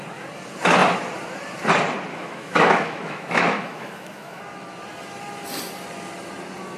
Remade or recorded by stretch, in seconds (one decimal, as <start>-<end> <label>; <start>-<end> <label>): 0.0-2.1 recorded; 2.1-4.4 remade; 4.4-6.8 recorded